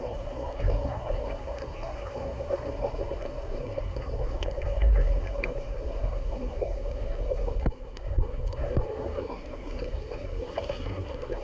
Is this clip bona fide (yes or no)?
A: no